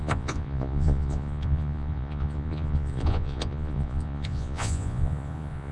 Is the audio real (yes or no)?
no